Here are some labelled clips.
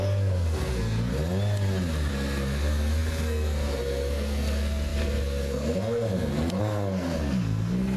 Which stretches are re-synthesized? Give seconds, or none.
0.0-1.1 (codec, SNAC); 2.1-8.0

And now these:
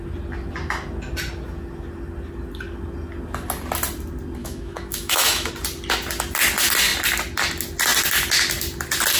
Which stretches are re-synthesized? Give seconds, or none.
4.4-5.5 (autoencoder, DAC-VAE)

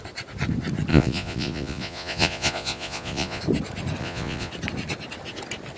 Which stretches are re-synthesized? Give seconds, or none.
0.9-3.4 (vocoder, Vocos); 4.0-4.5

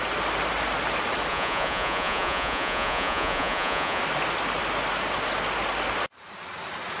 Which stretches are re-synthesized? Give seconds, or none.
1.3-4.0 (vocoder, Vocos)

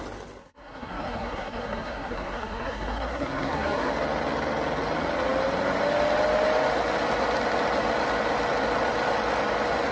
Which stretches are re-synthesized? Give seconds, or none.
0.4-3.9 (codec, SNAC)

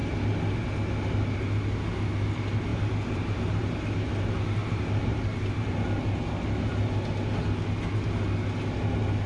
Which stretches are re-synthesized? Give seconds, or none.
2.7-3.6 (vocoder, BigVGAN v2); 4.6-6.4

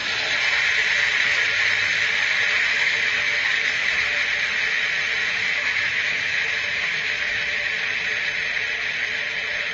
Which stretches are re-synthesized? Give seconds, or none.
2.7-3.9 (autoencoder, DAC-VAE); 5.2-7.7